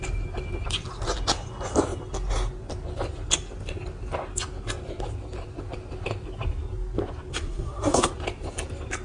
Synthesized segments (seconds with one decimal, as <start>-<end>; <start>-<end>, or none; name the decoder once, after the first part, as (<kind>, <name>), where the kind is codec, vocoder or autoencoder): 7.3-8.1 (codec, SNAC)